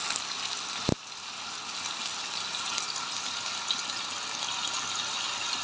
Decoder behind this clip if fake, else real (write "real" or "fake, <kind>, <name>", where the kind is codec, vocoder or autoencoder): real